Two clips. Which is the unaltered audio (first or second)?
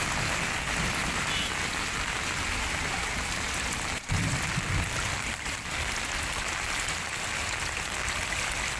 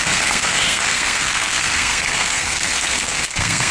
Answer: first